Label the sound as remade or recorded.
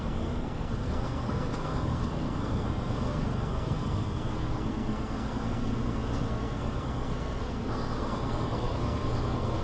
remade